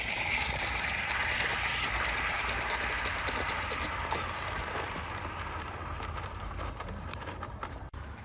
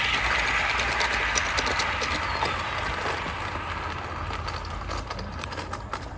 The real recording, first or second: second